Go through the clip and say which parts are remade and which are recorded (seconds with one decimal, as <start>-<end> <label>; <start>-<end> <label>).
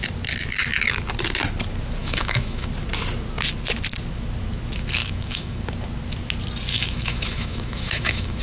0.0-2.0 recorded; 2.0-2.7 remade; 2.7-5.0 recorded; 5.0-5.6 remade; 5.6-6.7 recorded; 6.7-8.4 remade